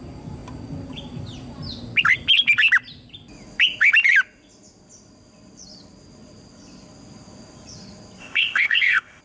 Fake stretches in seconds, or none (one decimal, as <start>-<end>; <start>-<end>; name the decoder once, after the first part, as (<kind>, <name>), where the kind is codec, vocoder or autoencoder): 8.2-9.2 (codec, ZipCodec)